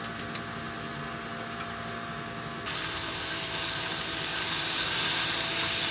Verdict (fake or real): real